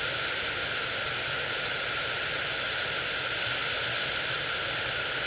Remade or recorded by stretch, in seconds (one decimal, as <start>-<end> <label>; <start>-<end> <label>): 0.0-5.3 recorded